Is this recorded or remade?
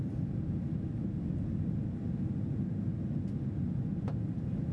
recorded